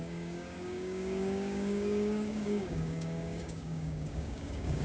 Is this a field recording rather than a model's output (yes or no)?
no